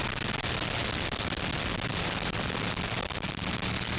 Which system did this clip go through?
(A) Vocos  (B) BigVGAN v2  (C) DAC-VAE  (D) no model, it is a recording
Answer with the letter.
D